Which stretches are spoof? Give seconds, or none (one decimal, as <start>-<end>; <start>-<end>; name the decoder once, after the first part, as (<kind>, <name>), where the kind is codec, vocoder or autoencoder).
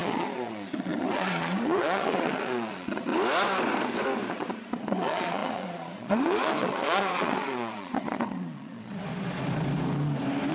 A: 0.0-3.1 (vocoder, Vocos); 4.3-9.1